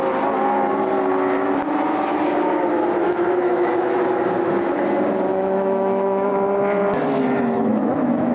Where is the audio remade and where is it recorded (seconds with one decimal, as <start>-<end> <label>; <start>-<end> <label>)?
0.0-3.0 recorded; 3.0-3.9 remade; 3.9-5.3 recorded; 5.3-6.3 remade; 6.3-7.7 recorded; 7.7-8.3 remade